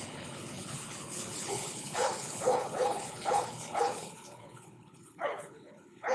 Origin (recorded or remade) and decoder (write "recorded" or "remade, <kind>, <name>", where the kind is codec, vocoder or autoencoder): remade, codec, HILCodec